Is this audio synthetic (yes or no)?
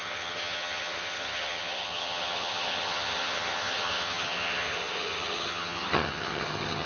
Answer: yes